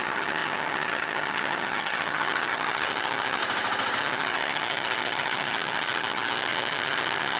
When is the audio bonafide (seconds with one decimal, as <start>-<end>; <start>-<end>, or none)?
3.4-4.0